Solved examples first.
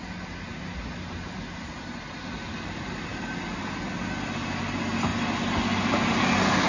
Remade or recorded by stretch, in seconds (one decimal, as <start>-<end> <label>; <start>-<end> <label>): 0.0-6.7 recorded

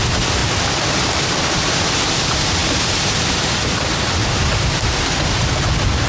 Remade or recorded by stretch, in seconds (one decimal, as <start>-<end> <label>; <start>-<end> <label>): 0.0-0.4 recorded; 0.4-1.5 remade; 1.5-2.6 recorded; 2.6-3.9 remade; 3.9-6.1 recorded

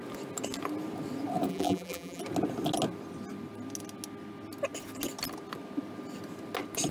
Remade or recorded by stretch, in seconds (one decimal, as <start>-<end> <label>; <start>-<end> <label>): 0.0-1.5 recorded; 1.5-2.2 remade; 2.2-6.9 recorded